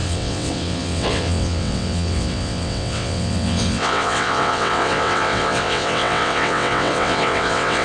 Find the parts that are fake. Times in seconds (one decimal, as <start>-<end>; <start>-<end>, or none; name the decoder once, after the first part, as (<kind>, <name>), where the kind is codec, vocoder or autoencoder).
0.0-7.8 (vocoder, WaveNeXt)